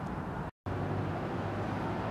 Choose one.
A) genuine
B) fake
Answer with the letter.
A